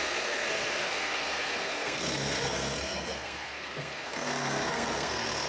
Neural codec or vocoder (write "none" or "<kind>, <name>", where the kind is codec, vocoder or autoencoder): codec, SNAC